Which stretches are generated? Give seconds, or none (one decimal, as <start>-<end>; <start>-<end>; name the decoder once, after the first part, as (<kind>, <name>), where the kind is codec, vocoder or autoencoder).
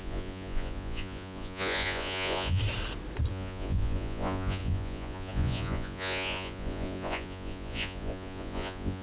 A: 0.0-2.6 (vocoder, Vocos); 3.3-9.0